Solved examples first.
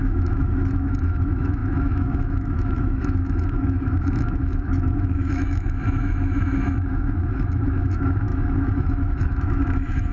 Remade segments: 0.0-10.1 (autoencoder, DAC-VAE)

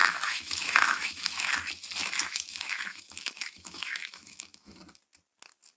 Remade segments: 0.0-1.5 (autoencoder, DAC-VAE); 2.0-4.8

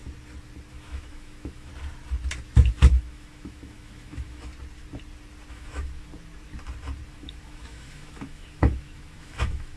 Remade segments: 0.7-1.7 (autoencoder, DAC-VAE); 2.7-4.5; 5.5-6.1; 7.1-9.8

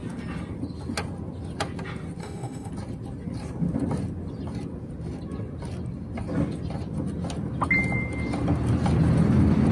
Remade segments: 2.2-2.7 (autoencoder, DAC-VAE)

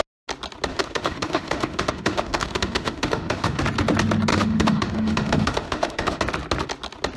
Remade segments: 0.7-3.6 (autoencoder, DAC-VAE); 4.3-6.2